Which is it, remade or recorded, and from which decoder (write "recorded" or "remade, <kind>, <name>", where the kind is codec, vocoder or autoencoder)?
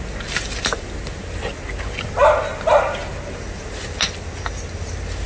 recorded